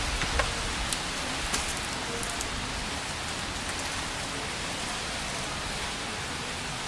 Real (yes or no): yes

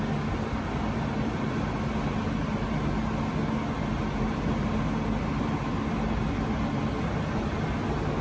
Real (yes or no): yes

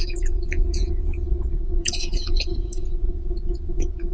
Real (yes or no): no